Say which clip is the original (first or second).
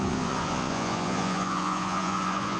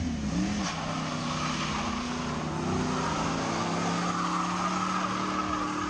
second